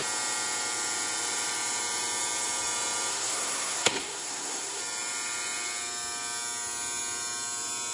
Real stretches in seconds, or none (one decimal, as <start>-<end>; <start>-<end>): 0.0-3.1; 4.8-7.9